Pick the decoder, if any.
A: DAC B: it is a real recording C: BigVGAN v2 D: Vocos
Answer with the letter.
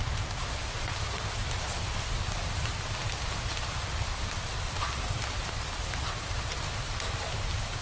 B